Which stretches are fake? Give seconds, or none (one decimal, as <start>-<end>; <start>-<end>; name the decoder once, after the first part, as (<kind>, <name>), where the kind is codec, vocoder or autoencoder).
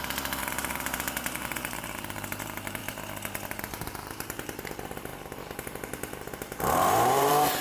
0.0-2.8 (vocoder, BigVGAN v2); 3.6-7.6